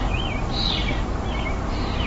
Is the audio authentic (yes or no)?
yes